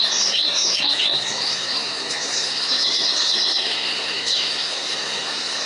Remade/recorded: remade